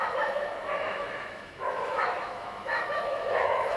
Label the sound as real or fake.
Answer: fake